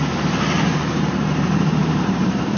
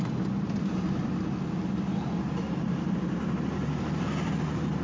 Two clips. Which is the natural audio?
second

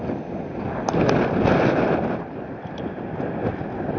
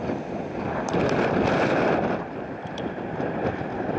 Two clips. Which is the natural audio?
first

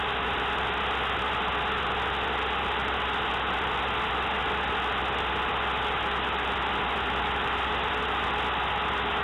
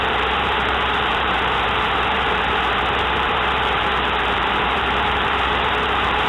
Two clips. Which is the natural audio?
first